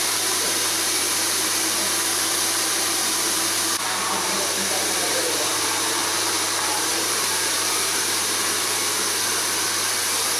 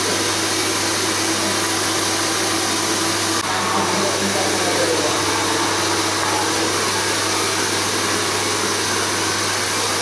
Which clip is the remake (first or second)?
first